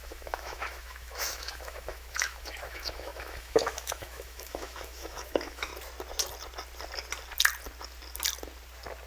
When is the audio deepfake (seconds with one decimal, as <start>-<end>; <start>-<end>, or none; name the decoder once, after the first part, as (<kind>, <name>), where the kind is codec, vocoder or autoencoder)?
0.0-5.7 (autoencoder, DAC-VAE)